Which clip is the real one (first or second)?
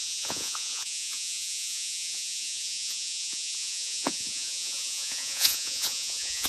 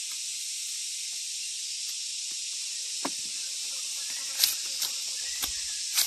second